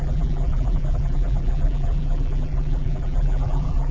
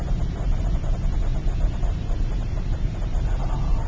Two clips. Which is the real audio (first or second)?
second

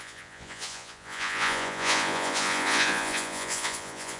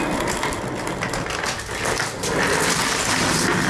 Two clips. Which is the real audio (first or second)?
second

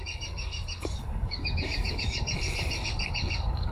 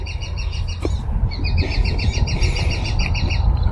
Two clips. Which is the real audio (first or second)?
second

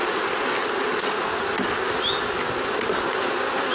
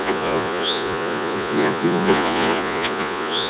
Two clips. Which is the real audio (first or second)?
first